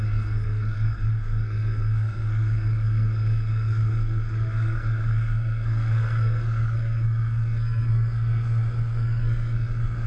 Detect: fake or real fake